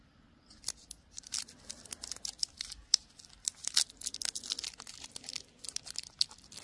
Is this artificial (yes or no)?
no